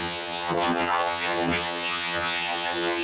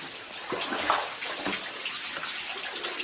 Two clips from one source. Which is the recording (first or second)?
second